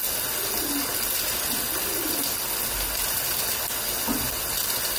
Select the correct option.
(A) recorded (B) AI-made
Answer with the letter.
A